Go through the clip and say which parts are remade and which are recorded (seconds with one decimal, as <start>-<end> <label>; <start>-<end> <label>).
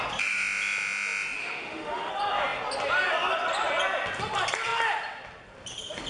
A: 0.0-1.4 recorded; 1.4-2.1 remade; 2.1-6.1 recorded